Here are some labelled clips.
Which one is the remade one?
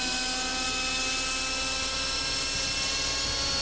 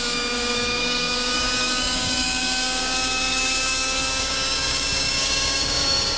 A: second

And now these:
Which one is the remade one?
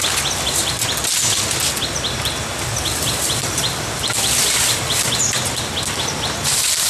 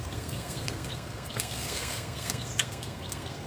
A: second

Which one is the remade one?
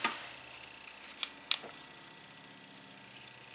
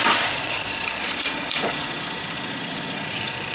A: second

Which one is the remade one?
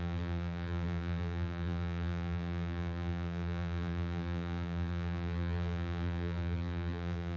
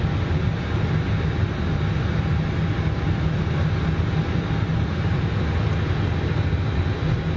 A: first